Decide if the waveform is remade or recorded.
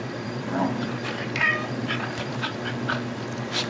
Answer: remade